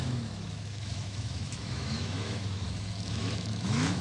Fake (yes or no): yes